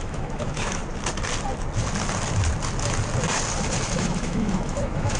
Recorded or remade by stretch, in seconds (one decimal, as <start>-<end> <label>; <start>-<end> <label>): 0.0-0.8 remade; 0.8-3.9 recorded; 3.9-5.2 remade